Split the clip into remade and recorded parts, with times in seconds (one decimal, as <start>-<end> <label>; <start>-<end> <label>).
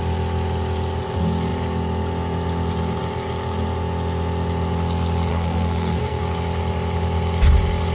0.0-5.3 recorded; 5.3-6.2 remade; 6.2-7.9 recorded